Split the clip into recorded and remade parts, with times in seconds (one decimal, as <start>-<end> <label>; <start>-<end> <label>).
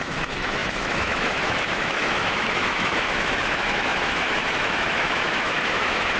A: 0.0-6.2 remade